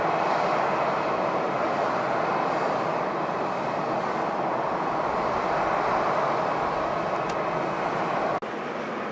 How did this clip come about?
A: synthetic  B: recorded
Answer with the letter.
B